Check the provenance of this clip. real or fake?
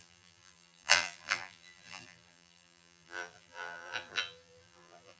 fake